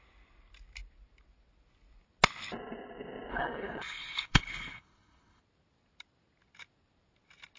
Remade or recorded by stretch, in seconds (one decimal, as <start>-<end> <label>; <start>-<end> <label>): 0.0-3.3 recorded; 3.3-5.4 remade; 5.4-7.6 recorded